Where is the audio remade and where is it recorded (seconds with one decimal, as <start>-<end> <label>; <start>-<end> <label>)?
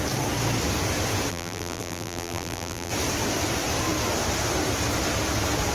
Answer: 0.0-1.3 recorded; 1.3-2.9 remade; 2.9-5.7 recorded